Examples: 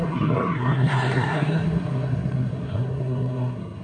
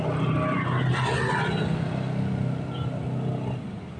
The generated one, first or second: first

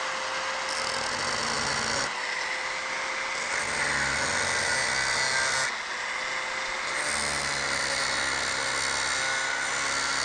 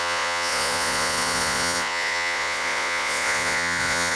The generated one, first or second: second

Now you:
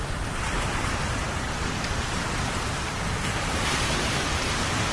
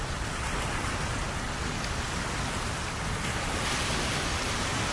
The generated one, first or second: first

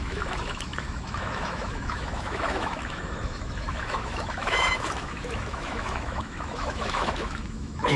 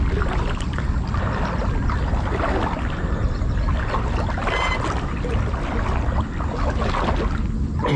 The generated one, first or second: first